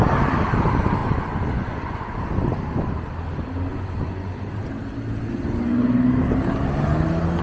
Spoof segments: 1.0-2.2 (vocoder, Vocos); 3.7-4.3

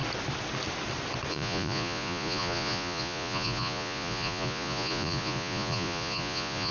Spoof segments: 1.3-6.7 (vocoder, Vocos)

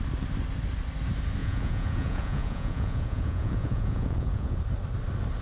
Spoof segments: 1.4-4.6 (vocoder, Vocos)

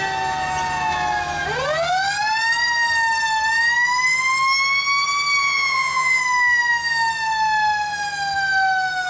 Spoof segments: 5.4-6.2 (vocoder, Vocos)